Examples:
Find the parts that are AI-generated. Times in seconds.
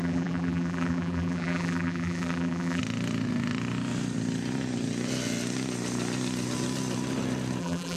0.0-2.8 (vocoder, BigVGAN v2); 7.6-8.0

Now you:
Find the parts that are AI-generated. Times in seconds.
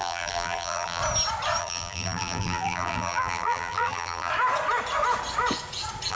0.0-1.0 (vocoder, BigVGAN v2); 1.6-4.3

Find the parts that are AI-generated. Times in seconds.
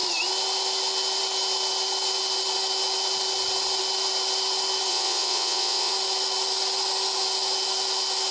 4.9-5.9 (vocoder, WaveNeXt)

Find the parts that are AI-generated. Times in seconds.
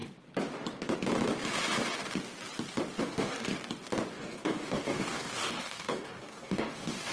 3.0-3.5 (codec, DAC); 4.1-7.1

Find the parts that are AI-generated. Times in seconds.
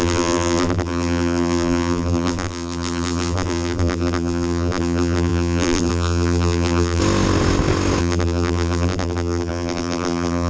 0.0-7.0 (vocoder, BigVGAN v2); 8.0-10.5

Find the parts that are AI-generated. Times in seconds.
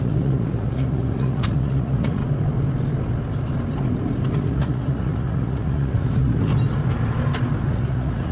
0.0-2.2 (vocoder, Vocos); 4.3-6.5; 7.7-8.3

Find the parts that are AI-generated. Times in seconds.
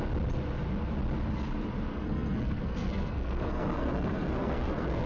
1.9-5.1 (codec, SNAC)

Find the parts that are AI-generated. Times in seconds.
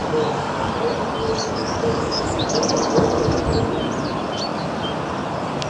0.0-0.7 (codec, DAC); 1.2-3.4